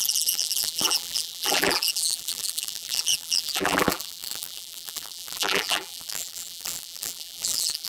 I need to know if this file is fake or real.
fake